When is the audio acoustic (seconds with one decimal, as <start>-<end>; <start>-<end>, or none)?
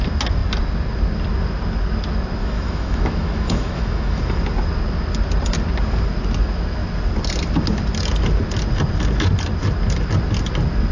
0.0-2.4; 4.2-10.9